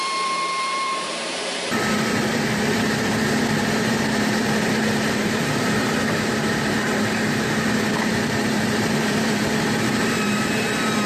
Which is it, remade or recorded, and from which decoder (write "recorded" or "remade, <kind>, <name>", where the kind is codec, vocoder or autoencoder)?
remade, vocoder, BigVGAN v2